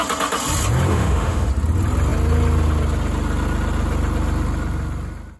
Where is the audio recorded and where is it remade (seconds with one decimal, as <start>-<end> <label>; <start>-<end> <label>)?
0.0-0.9 recorded; 0.9-1.5 remade; 1.5-5.4 recorded